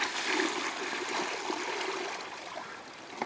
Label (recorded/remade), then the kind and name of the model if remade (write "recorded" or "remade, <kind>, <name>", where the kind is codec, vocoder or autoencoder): recorded